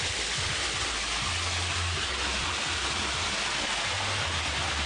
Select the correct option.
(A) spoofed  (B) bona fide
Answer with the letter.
B